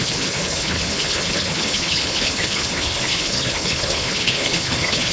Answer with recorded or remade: remade